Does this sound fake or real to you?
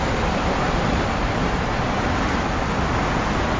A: real